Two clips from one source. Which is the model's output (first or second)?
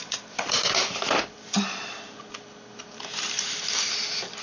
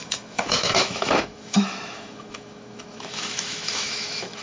second